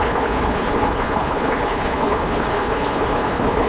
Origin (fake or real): fake